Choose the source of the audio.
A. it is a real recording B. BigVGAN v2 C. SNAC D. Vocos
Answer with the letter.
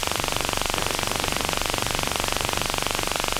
B